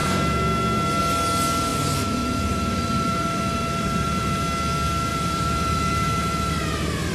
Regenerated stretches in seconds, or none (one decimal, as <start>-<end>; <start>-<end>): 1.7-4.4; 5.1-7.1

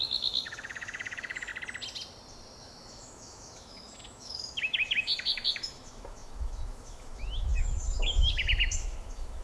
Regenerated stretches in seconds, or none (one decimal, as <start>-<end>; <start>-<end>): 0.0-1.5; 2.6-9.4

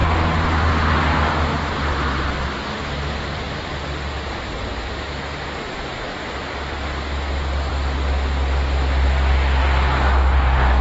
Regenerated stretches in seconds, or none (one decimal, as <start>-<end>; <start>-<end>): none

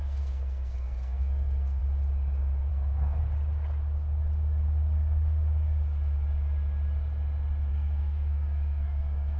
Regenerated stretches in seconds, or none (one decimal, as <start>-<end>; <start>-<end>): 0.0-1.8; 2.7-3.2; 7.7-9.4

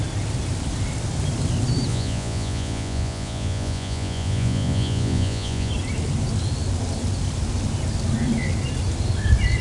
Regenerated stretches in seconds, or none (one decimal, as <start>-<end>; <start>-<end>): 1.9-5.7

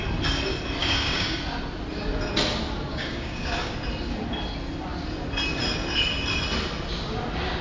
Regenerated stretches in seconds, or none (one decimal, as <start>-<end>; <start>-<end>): 0.8-1.4; 2.9-3.7